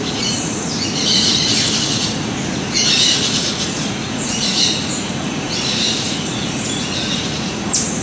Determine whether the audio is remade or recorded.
remade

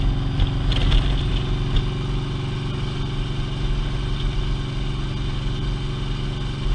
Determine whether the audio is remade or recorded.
recorded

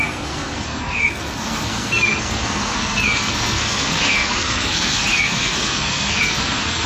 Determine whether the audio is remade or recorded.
remade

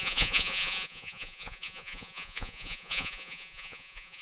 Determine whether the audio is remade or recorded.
remade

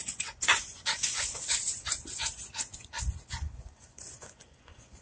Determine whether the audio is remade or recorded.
remade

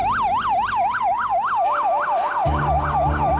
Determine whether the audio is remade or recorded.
recorded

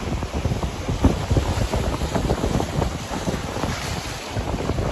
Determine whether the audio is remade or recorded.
recorded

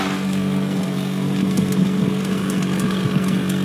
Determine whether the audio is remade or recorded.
remade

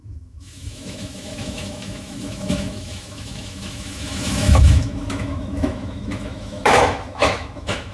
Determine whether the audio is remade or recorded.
remade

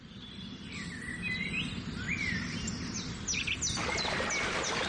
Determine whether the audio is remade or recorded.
recorded